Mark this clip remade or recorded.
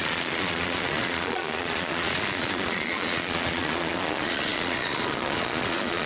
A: remade